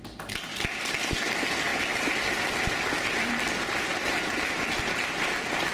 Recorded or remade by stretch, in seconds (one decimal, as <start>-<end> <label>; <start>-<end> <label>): 0.0-5.7 recorded